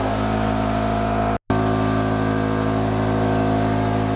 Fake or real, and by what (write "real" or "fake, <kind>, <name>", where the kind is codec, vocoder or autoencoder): real